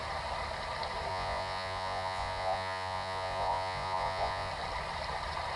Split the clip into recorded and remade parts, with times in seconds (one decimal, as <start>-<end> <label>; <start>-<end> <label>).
0.0-1.1 recorded; 1.1-4.5 remade; 4.5-5.6 recorded